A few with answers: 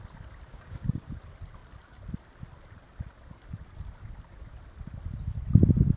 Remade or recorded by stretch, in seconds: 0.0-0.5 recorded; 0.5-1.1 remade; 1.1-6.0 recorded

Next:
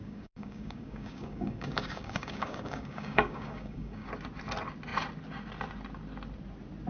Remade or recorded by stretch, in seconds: 0.0-4.1 remade; 4.1-6.9 recorded